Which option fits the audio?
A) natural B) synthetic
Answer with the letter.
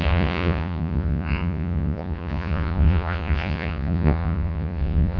B